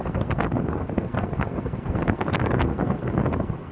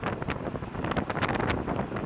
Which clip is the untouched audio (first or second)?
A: second